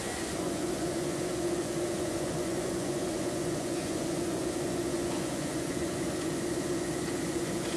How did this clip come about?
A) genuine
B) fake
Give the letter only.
B